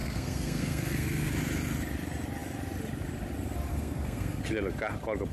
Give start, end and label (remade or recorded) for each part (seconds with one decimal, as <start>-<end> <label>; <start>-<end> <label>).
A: 0.0-1.3 remade; 1.3-3.7 recorded; 3.7-4.4 remade; 4.4-5.3 recorded